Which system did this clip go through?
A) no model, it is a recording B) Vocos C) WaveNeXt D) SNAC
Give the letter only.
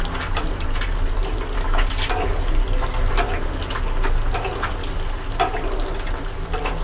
A